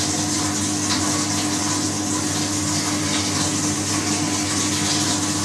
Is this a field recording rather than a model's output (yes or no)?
yes